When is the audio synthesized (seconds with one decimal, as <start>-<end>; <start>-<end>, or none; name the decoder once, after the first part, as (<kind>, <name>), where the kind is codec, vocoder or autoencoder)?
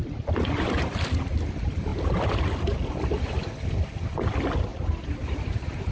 4.7-5.9 (vocoder, BigVGAN v2)